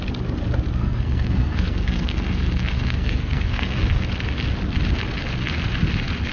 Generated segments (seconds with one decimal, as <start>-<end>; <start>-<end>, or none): 0.8-4.1